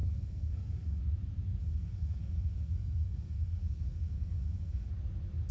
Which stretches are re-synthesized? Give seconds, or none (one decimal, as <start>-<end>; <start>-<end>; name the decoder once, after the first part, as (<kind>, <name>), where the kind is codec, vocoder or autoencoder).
0.0-1.0 (codec, SNAC); 1.6-4.9

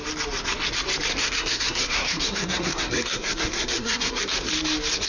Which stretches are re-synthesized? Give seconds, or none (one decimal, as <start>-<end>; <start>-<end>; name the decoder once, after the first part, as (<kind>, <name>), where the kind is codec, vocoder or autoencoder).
1.1-4.2 (codec, SNAC)

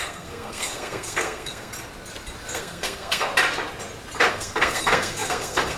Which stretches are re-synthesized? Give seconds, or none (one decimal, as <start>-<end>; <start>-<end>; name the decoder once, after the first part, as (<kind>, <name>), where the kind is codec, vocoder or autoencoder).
0.0-1.7 (codec, SNAC); 2.5-3.3; 4.3-5.8